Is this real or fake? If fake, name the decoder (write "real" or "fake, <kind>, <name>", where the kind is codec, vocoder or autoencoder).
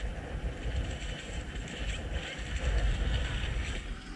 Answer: real